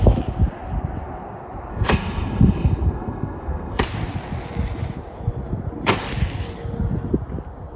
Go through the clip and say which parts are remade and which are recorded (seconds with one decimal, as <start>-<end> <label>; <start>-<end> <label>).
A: 0.0-1.7 recorded; 1.7-3.8 remade; 3.8-7.8 recorded